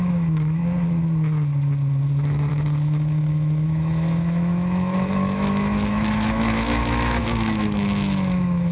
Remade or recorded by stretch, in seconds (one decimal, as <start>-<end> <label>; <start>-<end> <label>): 0.0-0.6 remade; 0.6-2.5 recorded; 2.5-8.7 remade